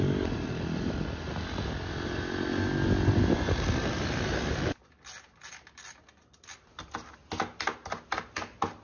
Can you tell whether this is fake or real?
real